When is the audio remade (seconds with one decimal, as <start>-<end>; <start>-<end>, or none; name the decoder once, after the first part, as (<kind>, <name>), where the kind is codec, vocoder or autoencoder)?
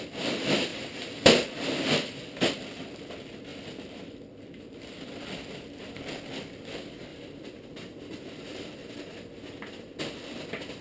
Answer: 3.5-5.9 (vocoder, BigVGAN v2); 7.1-7.7